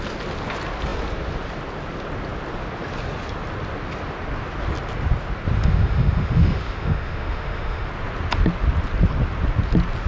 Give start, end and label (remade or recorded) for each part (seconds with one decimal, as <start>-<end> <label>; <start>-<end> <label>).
0.0-5.6 recorded; 5.6-7.9 remade; 7.9-10.1 recorded